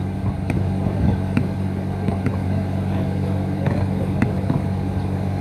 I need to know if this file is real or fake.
fake